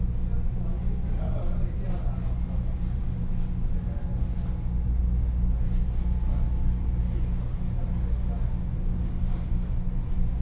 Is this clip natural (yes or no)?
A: yes